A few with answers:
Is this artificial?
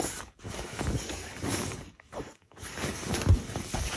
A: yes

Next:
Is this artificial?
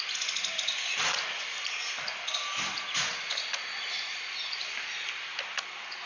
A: no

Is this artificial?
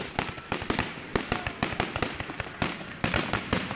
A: no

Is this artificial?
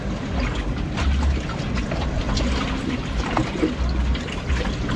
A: no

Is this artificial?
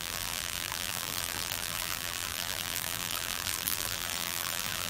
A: yes